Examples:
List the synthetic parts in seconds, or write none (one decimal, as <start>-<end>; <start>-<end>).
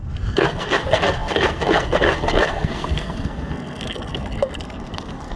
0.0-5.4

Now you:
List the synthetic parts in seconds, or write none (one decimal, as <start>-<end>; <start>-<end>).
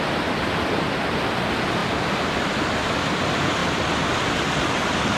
none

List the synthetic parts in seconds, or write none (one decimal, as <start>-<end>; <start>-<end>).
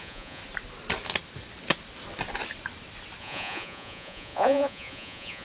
0.0-0.4; 3.2-5.4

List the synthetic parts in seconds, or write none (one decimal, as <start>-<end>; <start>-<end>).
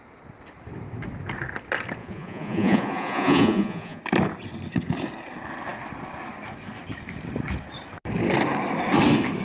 2.0-4.0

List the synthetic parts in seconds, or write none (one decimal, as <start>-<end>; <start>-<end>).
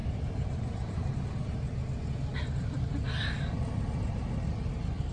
0.0-1.1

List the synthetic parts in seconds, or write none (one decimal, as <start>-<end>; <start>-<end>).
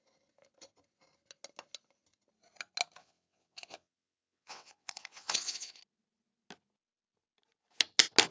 3.0-5.8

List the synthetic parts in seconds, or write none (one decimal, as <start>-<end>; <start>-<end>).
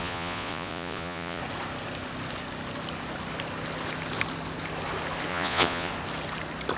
0.0-1.4; 5.3-5.9